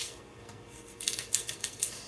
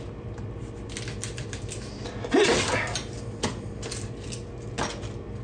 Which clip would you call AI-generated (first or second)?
first